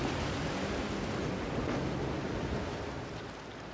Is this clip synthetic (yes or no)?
no